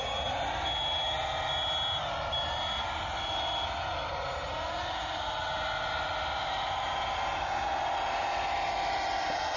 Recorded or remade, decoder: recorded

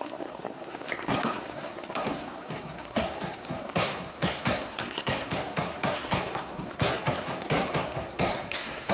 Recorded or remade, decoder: remade, codec, SNAC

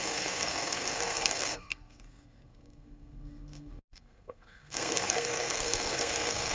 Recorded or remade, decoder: remade, codec, SNAC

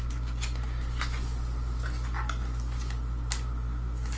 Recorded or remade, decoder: recorded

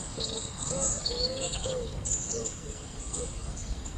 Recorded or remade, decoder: remade, codec, SNAC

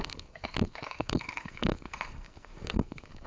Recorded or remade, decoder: remade, codec, SNAC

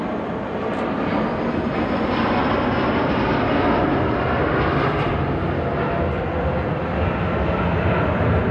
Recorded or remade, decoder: recorded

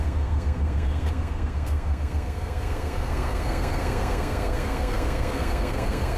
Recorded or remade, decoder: remade, codec, SNAC